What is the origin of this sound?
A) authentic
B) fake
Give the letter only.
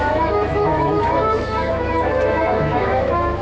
B